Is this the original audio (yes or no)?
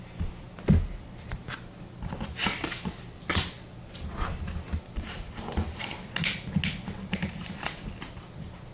yes